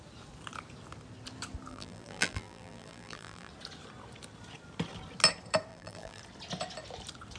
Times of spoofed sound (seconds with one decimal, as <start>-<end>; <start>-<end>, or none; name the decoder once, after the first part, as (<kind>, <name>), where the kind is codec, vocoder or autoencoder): 1.7-3.5 (vocoder, BigVGAN v2); 5.7-6.2